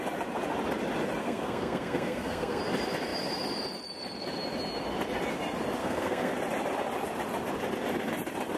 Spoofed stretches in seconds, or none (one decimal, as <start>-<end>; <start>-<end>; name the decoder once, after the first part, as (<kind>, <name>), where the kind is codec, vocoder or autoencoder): 1.2-2.6 (codec, SNAC); 5.8-6.3